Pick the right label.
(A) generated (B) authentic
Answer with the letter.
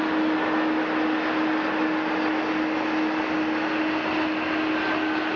B